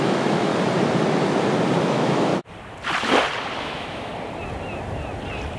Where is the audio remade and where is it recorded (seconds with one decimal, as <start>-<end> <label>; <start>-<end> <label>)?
0.0-0.5 remade; 0.5-1.8 recorded; 1.8-2.3 remade; 2.3-3.6 recorded; 3.6-4.1 remade; 4.1-5.6 recorded

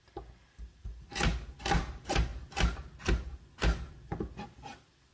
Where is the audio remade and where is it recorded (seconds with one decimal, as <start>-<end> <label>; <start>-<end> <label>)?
0.0-1.3 remade; 1.3-1.8 recorded; 1.8-2.3 remade; 2.3-5.1 recorded

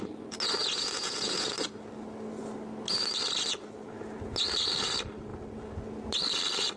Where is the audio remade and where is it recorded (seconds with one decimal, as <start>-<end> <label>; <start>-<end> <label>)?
0.0-0.6 recorded; 0.6-1.5 remade; 1.5-6.8 recorded

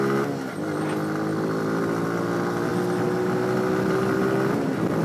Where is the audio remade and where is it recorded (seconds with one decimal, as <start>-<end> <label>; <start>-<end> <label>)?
0.0-1.3 recorded; 1.3-2.0 remade; 2.0-5.0 recorded

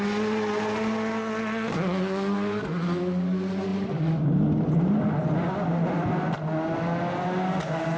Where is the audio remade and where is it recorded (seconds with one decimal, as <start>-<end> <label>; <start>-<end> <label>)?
0.0-8.0 recorded